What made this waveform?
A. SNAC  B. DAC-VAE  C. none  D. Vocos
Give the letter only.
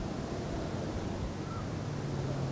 C